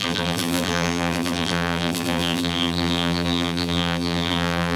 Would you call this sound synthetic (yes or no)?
yes